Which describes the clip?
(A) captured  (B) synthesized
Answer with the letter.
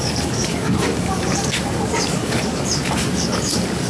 B